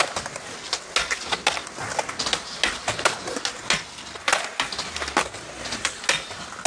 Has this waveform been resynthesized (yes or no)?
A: no